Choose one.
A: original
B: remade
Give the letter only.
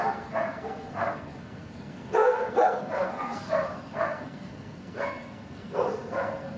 B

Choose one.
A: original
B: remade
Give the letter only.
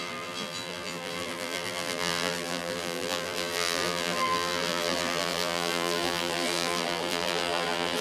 B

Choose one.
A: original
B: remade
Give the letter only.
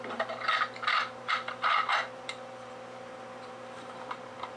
B